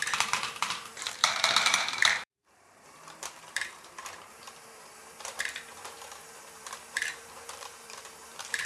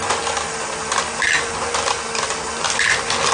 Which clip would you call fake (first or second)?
first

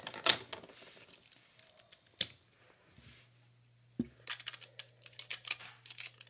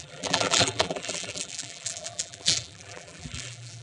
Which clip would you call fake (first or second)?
second